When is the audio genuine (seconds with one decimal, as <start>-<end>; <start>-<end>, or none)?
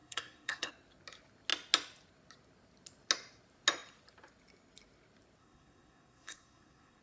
0.7-5.4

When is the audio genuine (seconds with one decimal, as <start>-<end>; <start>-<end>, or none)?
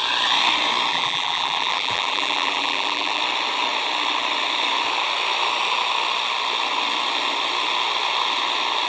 0.0-0.9; 3.2-8.9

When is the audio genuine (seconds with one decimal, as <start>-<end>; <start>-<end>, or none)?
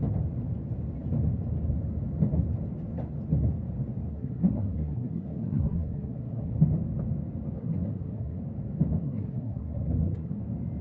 0.0-4.1; 6.6-7.6; 8.4-9.0; 10.4-10.8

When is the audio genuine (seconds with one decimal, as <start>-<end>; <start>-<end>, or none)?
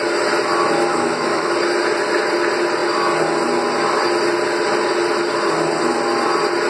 0.0-0.9; 1.5-6.7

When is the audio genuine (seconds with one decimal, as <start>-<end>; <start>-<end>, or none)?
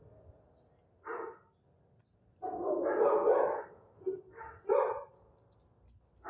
0.0-6.3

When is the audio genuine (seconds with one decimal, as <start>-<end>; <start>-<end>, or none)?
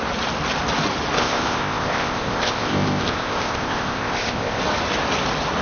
0.0-1.2; 4.6-5.6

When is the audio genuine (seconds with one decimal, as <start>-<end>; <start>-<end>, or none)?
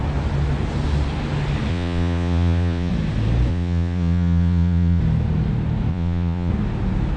0.0-1.7; 2.9-3.5; 5.0-5.9; 6.5-7.2